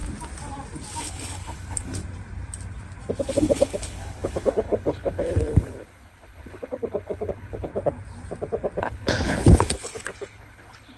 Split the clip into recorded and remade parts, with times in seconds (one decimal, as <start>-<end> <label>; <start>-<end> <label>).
0.0-1.0 recorded; 1.0-2.0 remade; 2.0-3.3 recorded; 3.3-7.7 remade; 7.7-8.8 recorded; 8.8-11.0 remade